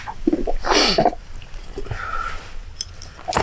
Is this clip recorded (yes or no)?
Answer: yes